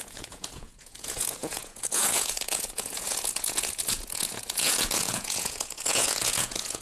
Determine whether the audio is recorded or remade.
remade